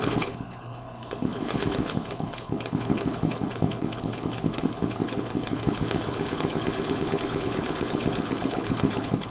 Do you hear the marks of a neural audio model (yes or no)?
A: yes